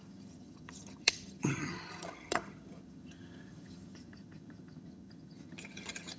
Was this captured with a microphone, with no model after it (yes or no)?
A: no